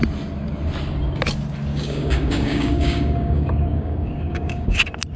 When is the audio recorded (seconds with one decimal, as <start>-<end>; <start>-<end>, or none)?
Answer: 0.0-1.7; 4.8-5.2